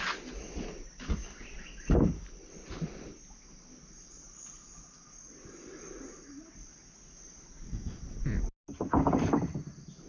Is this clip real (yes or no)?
yes